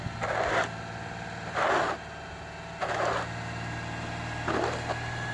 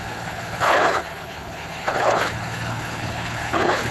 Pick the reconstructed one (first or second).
second